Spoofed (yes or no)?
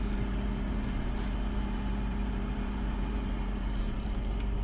yes